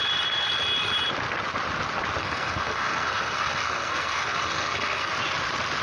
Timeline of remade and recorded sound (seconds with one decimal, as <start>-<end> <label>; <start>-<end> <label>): 0.0-2.2 recorded; 2.2-5.1 remade; 5.1-5.8 recorded